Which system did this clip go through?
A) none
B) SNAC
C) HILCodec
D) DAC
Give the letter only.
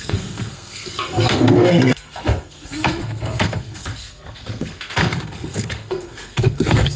B